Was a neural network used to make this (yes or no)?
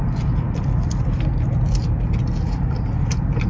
no